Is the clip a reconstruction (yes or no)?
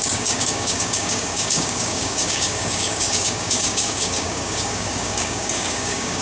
yes